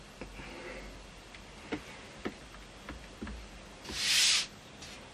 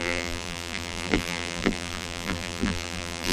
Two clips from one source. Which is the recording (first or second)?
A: first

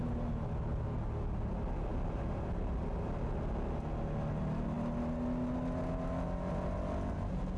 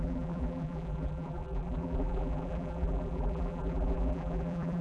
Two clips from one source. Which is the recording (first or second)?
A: first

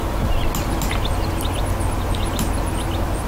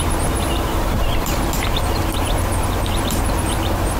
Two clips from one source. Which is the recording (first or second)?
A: first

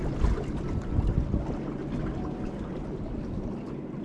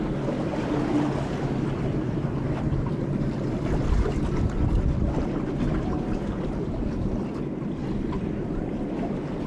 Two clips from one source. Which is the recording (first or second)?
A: first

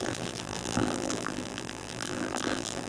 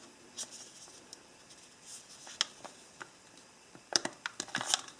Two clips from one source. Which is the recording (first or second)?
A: second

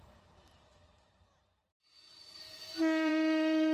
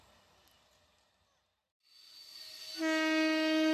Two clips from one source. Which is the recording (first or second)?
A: second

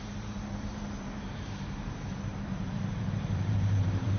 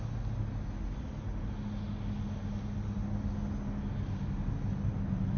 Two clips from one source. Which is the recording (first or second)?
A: second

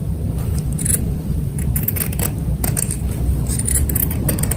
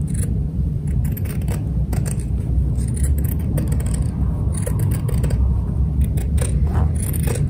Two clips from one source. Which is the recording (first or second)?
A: second